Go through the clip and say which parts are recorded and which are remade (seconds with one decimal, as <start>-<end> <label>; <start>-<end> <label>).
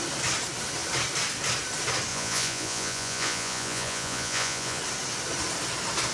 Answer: 0.0-2.1 recorded; 2.1-4.8 remade; 4.8-6.1 recorded